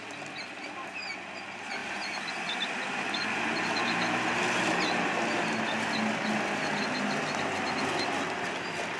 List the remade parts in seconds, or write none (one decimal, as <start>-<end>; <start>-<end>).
none